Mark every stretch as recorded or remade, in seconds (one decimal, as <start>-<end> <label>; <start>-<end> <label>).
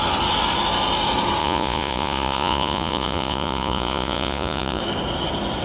0.0-1.4 recorded; 1.4-4.8 remade; 4.8-5.6 recorded